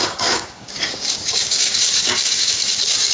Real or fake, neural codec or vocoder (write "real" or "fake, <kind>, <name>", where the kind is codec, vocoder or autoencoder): fake, codec, DAC